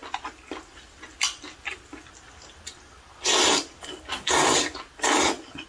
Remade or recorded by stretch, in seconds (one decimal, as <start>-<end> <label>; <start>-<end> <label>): 0.0-5.7 recorded